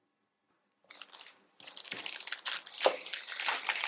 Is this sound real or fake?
real